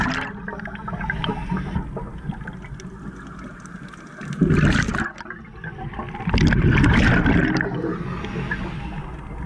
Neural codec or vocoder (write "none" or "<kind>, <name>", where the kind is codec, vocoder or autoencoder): none